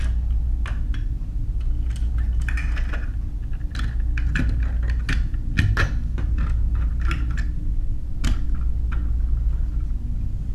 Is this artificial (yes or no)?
no